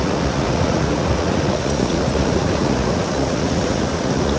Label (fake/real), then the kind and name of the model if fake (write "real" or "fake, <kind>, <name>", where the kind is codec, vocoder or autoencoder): fake, vocoder, Vocos